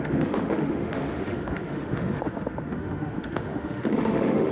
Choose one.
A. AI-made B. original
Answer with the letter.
A